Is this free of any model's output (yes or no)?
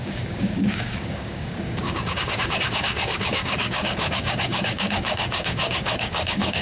no